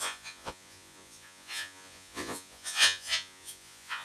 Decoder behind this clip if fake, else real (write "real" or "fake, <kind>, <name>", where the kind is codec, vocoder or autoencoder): fake, vocoder, Vocos